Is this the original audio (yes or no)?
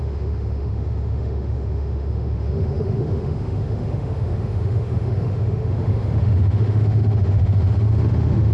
no